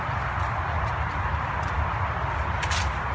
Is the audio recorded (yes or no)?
yes